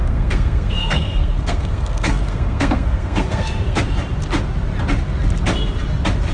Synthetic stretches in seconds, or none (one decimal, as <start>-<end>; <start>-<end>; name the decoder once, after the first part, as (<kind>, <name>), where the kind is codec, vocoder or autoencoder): 0.0-3.8 (codec, SNAC)